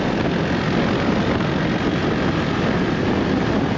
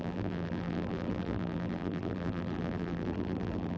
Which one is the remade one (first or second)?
second